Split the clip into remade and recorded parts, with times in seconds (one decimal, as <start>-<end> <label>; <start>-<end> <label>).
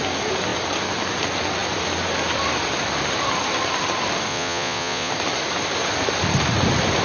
0.0-4.3 recorded; 4.3-5.1 remade; 5.1-7.0 recorded